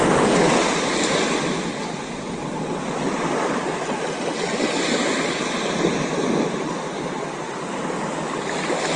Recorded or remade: recorded